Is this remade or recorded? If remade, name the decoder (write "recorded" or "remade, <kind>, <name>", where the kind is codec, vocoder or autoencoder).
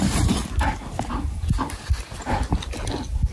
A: recorded